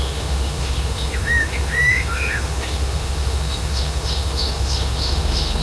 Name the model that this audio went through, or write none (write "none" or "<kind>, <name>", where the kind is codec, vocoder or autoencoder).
autoencoder, DAC-VAE